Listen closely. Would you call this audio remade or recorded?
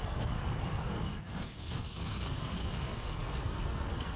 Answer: remade